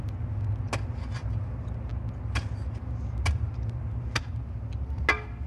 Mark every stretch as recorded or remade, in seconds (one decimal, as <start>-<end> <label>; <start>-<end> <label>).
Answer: 0.0-5.5 recorded